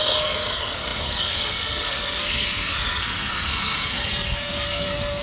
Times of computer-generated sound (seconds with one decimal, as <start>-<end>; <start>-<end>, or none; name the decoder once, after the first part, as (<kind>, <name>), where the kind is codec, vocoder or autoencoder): 0.0-5.2 (codec, SNAC)